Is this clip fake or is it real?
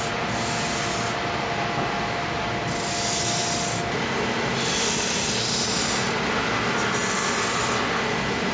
real